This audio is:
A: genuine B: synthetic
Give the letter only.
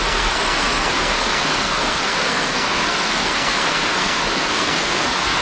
B